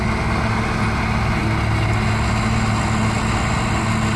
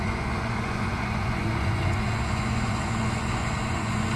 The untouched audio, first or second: first